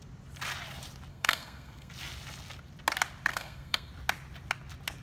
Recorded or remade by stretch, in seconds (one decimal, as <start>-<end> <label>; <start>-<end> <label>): 0.0-1.1 recorded; 1.1-1.9 remade; 1.9-3.3 recorded; 3.3-3.9 remade; 3.9-5.0 recorded